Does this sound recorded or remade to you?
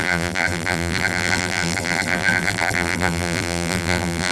remade